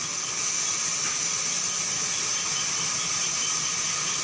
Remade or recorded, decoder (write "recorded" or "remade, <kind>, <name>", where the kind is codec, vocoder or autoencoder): recorded